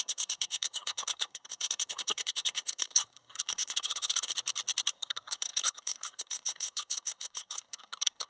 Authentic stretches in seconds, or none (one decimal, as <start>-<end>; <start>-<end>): 4.3-4.9